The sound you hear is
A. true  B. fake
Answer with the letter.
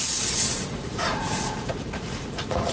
B